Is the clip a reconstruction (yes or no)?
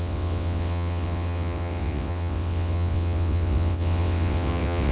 yes